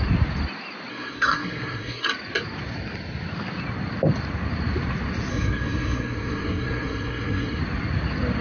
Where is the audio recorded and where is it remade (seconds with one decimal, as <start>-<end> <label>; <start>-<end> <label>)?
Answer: 0.0-0.9 recorded; 0.9-2.1 remade; 2.1-5.3 recorded; 5.3-7.6 remade; 7.6-8.4 recorded